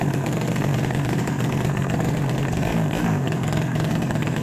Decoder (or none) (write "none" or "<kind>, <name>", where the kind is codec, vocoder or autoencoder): codec, SNAC